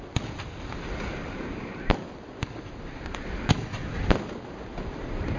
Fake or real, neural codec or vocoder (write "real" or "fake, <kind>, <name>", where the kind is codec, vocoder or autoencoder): real